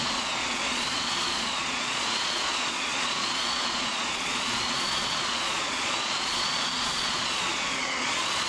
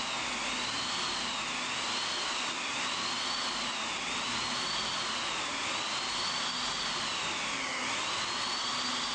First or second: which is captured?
second